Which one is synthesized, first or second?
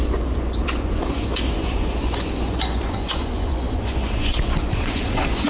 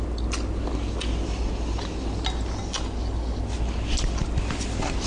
first